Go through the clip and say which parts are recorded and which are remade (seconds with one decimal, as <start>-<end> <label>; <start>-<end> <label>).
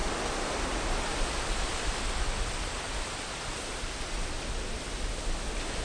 0.0-5.8 recorded